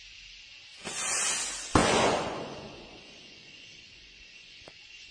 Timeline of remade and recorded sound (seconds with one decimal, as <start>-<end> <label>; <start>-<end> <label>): 0.0-1.8 recorded; 1.8-5.1 remade